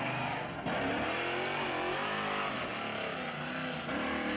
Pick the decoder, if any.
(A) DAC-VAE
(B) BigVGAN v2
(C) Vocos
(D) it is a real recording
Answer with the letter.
D